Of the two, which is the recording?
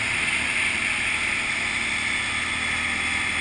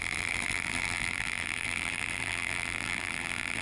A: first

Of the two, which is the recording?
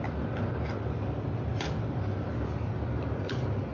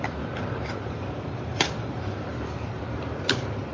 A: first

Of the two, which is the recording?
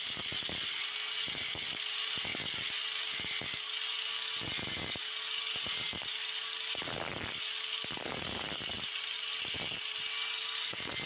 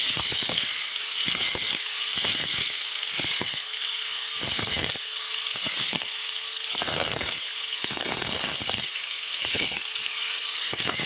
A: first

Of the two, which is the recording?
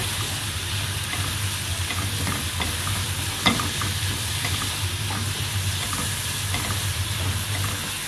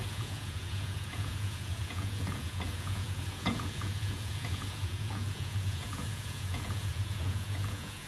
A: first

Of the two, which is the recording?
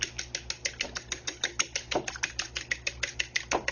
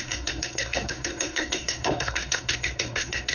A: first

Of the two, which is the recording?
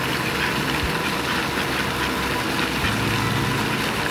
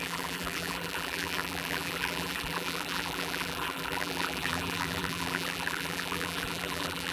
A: first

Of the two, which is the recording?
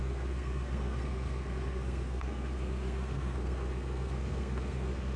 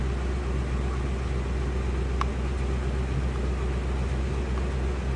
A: second